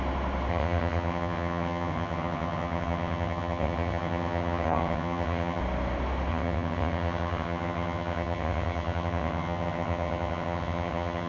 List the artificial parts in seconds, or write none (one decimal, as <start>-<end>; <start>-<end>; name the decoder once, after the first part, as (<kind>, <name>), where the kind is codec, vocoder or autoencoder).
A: 0.5-5.6 (vocoder, HiFi-GAN); 6.3-11.3